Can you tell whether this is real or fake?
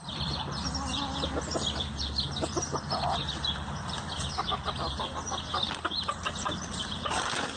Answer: real